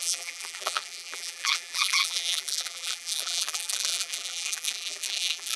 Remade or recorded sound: remade